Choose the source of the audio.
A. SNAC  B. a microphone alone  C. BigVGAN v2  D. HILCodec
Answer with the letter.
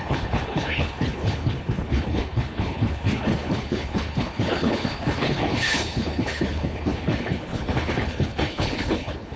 D